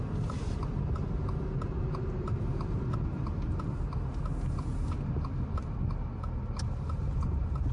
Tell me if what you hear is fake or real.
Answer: real